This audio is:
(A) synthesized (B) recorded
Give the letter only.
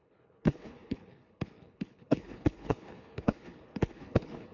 A